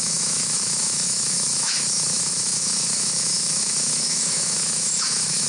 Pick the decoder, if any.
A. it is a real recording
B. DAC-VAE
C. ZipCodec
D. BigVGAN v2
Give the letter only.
B